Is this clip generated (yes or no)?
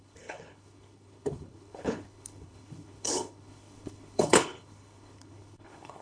yes